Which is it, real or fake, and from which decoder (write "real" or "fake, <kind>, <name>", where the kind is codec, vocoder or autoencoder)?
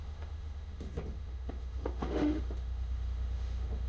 fake, autoencoder, DAC-VAE